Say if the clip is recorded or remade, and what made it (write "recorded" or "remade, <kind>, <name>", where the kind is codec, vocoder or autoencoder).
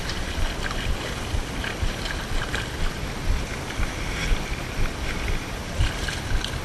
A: remade, vocoder, BigVGAN v2